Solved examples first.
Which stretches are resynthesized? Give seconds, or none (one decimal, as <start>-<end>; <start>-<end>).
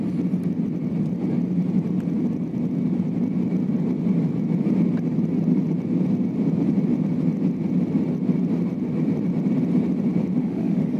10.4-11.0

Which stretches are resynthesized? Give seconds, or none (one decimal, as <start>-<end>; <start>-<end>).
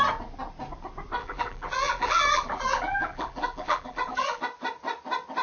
1.2-4.4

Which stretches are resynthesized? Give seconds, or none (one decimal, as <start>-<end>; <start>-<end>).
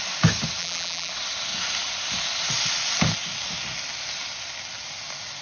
0.6-1.1